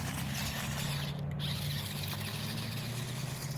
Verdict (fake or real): real